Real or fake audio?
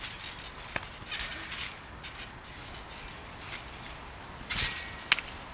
real